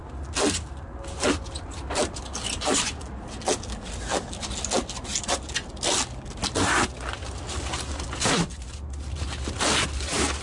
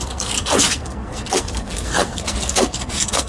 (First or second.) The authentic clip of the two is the first